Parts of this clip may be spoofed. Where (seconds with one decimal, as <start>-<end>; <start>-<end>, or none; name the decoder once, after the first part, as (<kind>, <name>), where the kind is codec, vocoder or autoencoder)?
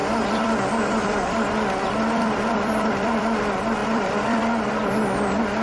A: 0.0-3.4 (vocoder, BigVGAN v2); 3.8-4.4